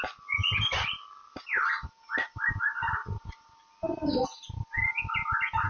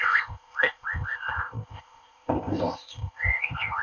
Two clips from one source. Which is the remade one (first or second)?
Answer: second